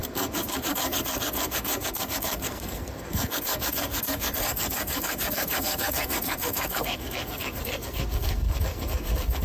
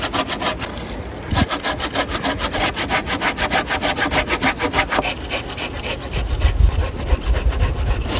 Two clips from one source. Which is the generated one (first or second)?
first